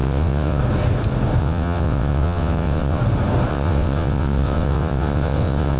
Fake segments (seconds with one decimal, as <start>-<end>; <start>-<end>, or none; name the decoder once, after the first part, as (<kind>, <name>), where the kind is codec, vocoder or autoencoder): 0.0-0.6 (vocoder, WaveNeXt); 1.4-3.0; 3.5-5.8